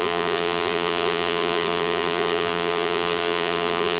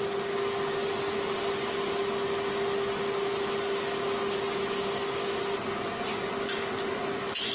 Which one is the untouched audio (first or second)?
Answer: second